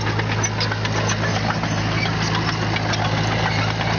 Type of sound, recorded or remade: recorded